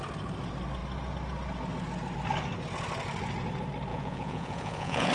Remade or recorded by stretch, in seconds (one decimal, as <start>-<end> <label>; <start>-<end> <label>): 0.0-3.9 recorded; 3.9-5.1 remade